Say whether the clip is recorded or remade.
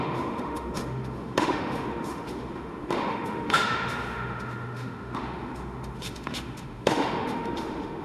remade